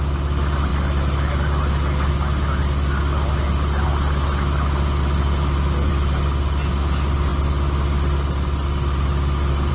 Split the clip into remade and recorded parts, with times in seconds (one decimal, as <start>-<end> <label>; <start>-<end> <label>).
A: 0.0-9.7 recorded